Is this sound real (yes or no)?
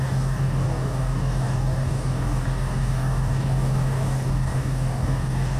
no